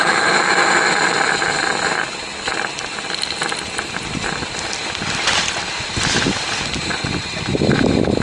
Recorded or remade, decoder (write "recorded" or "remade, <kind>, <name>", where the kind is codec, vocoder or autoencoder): remade, vocoder, BigVGAN v2